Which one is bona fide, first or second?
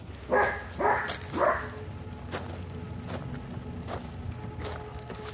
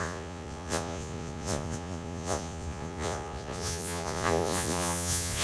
first